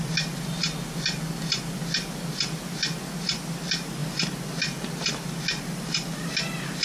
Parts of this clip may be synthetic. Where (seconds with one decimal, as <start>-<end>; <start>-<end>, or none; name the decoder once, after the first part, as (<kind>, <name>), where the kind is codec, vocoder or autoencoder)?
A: none